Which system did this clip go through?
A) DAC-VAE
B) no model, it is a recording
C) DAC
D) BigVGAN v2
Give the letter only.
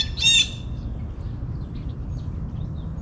B